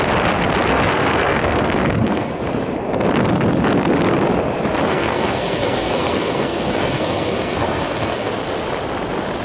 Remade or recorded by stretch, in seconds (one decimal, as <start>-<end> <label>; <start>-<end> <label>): 0.0-0.7 recorded; 0.7-2.3 remade; 2.3-4.9 recorded; 4.9-8.3 remade; 8.3-9.4 recorded